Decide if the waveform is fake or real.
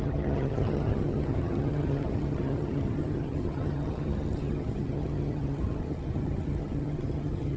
fake